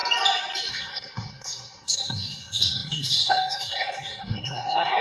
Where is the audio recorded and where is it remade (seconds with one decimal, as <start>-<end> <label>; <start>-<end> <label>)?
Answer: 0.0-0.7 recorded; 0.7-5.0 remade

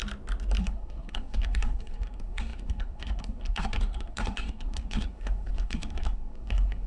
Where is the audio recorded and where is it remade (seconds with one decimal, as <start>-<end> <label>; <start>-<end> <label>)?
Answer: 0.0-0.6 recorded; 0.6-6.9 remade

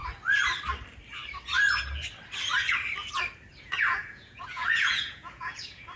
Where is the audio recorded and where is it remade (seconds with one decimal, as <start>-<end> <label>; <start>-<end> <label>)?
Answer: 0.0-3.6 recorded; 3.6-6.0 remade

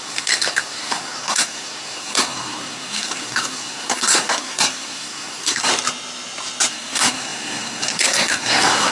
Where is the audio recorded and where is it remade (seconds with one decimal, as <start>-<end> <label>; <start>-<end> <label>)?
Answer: 0.0-5.7 remade; 5.7-6.7 recorded; 6.7-8.9 remade